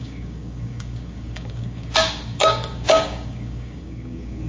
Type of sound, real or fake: fake